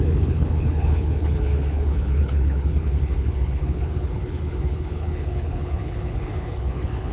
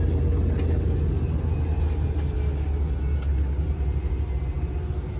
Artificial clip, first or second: first